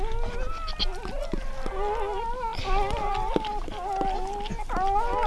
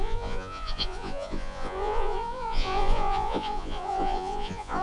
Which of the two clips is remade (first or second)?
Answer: second